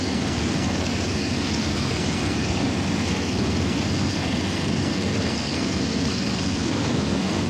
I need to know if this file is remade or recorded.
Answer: remade